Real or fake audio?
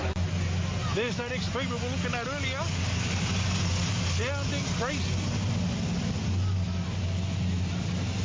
real